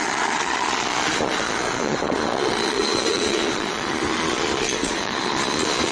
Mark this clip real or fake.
fake